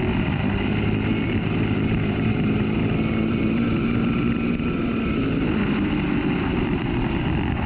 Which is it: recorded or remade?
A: recorded